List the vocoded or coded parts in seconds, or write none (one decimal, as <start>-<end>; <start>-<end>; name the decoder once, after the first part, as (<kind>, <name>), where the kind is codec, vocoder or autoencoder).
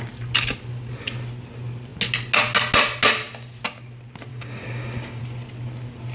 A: 4.3-5.2 (codec, DAC)